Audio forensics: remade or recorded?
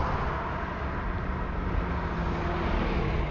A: recorded